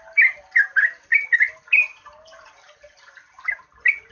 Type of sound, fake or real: real